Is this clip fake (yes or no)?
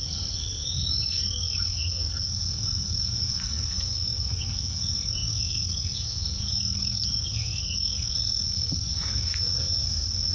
yes